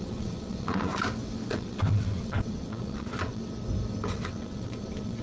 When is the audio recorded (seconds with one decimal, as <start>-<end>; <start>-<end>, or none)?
0.9-1.5; 3.4-4.1